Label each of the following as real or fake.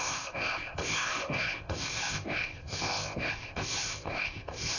fake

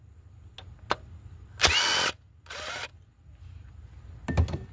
real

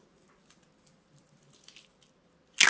real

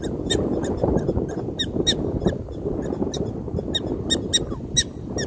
real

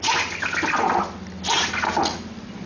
real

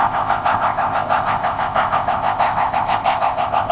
fake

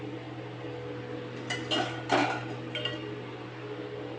real